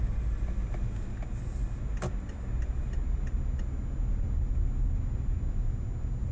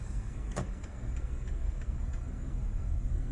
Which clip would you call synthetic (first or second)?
second